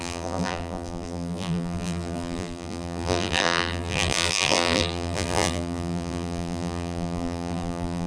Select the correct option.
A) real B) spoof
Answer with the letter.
B